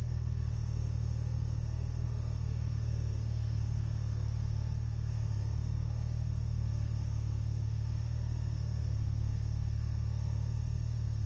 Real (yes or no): no